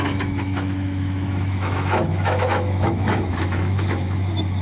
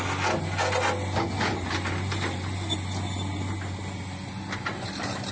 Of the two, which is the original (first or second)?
second